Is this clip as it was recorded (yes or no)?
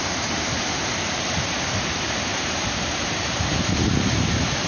no